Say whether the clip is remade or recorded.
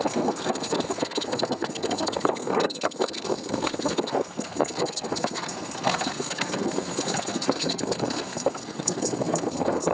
remade